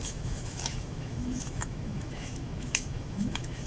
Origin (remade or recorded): remade